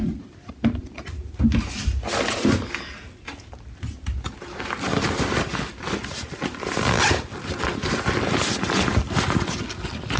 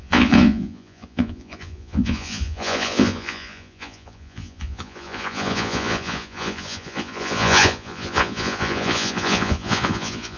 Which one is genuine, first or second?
first